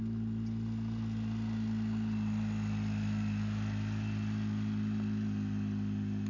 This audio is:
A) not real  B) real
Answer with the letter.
B